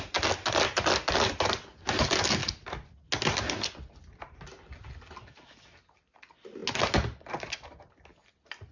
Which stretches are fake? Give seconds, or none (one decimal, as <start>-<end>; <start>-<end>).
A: none